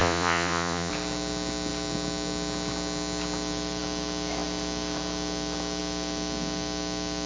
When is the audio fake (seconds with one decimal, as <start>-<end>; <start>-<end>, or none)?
0.0-0.9